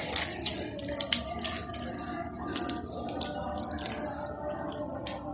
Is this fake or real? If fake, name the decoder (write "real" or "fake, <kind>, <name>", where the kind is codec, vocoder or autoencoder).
real